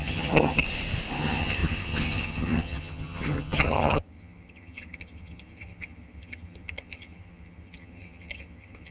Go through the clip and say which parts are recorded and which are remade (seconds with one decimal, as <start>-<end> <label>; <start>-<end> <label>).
0.0-0.6 remade; 0.6-1.2 recorded; 1.2-8.9 remade